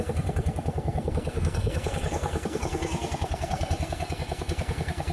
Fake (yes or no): yes